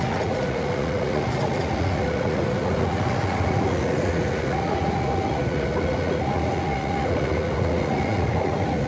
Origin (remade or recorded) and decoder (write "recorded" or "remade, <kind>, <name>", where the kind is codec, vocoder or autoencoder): remade, vocoder, Vocos